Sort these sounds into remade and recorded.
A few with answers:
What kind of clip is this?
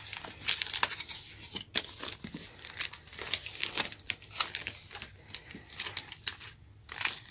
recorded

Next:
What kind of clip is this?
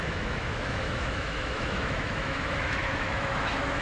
remade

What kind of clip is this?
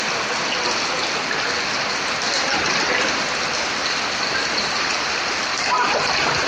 recorded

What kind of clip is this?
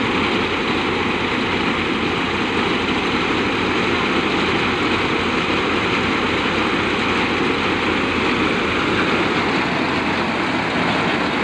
recorded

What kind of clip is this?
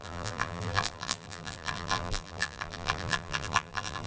remade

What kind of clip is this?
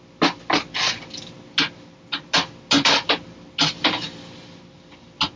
recorded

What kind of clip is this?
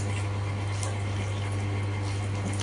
recorded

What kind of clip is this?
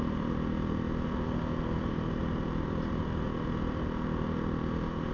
recorded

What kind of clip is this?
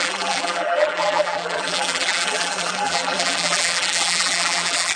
remade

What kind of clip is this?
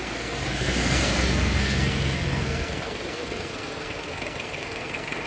remade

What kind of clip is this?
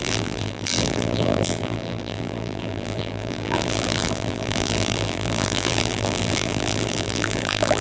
remade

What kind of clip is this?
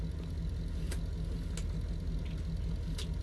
recorded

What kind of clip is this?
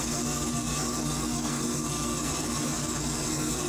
remade